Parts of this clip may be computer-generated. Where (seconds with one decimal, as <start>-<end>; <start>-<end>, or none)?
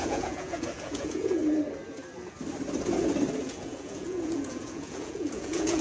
0.0-1.4; 3.4-5.8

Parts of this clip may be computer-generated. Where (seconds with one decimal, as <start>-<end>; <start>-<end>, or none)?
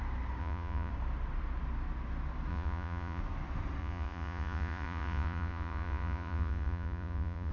0.4-0.9; 2.5-3.2; 3.8-7.5